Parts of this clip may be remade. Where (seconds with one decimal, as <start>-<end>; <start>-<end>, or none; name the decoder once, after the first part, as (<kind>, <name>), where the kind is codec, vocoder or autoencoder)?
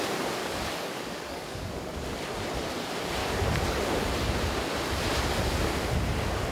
0.4-2.0 (codec, DAC); 3.2-3.8